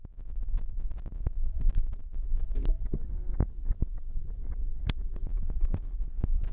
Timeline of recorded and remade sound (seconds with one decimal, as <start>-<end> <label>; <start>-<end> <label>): 0.0-6.5 recorded